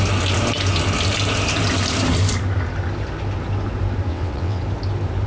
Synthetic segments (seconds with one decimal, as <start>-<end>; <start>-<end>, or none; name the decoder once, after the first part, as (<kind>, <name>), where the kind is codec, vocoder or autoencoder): 4.1-4.6 (vocoder, WaveNeXt)